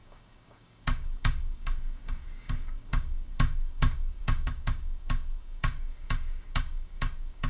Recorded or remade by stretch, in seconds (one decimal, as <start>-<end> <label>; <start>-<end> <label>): 0.0-7.5 remade